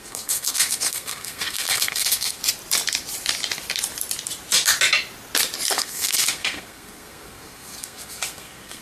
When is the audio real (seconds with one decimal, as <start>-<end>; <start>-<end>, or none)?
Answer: 2.4-5.7